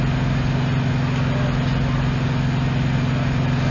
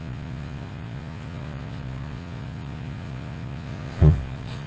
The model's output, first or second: second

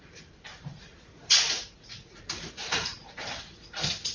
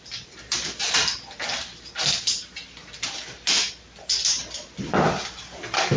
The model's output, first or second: first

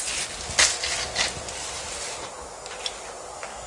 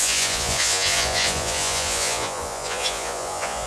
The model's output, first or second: second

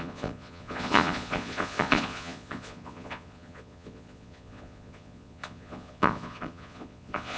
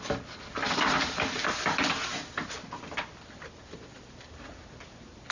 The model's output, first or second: first